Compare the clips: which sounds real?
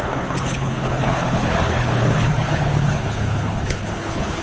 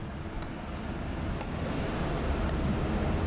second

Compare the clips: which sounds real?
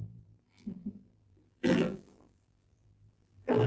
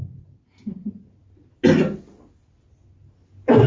second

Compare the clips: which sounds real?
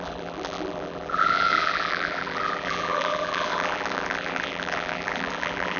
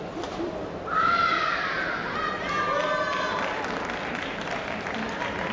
second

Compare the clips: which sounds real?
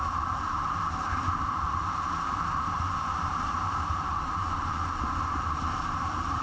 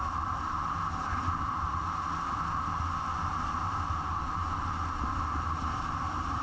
second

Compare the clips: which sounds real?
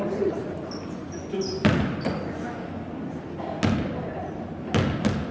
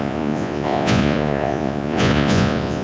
first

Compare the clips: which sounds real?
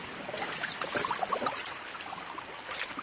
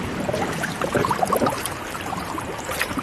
first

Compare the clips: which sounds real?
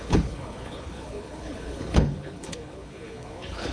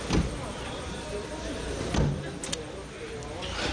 second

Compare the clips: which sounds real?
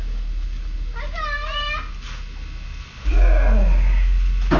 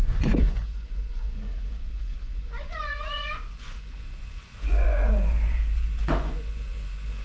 first